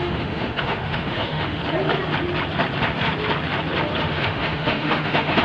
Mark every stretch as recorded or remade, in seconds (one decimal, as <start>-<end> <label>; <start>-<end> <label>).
0.0-1.6 remade; 1.6-4.0 recorded; 4.0-5.4 remade